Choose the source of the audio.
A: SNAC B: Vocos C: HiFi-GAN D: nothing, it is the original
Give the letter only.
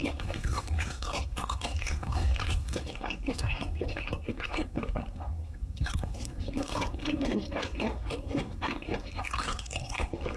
A